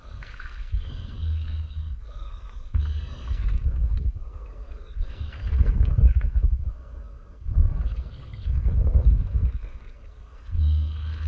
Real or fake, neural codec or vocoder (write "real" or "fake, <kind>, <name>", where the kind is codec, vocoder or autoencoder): fake, codec, SNAC